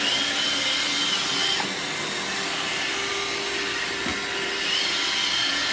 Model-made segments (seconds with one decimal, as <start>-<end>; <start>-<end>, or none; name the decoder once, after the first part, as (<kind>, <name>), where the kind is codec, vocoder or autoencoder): none